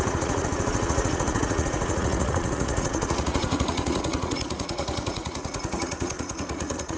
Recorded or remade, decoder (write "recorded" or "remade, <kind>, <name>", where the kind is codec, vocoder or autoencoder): remade, vocoder, Vocos